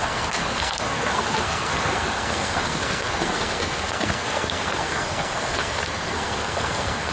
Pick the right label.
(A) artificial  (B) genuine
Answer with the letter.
A